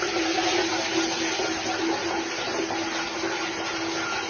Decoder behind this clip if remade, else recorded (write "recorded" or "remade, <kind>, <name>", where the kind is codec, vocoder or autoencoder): recorded